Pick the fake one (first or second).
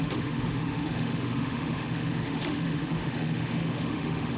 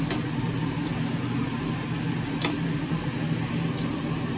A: first